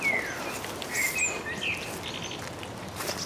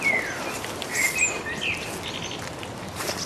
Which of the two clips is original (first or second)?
first